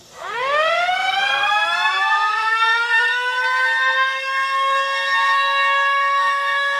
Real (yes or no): no